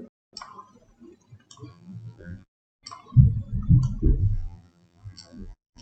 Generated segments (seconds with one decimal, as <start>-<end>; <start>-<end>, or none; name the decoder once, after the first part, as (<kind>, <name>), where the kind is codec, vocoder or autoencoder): 1.7-2.7 (vocoder, BigVGAN v2); 4.2-5.8